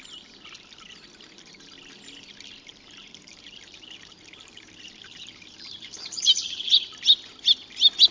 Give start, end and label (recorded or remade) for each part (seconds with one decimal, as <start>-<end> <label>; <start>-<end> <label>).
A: 0.0-2.7 recorded; 2.7-6.8 remade; 6.8-8.1 recorded